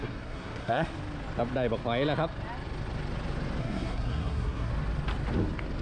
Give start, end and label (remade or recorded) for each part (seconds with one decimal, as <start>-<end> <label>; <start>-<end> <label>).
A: 0.0-0.9 remade; 0.9-3.6 recorded; 3.6-4.7 remade; 4.7-5.8 recorded